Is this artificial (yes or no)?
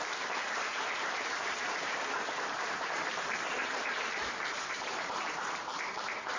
yes